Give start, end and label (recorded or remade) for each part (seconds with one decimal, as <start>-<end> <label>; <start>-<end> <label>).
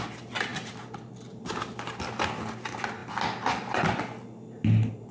0.0-3.0 recorded; 3.0-4.0 remade; 4.0-5.1 recorded